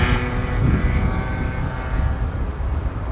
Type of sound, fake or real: real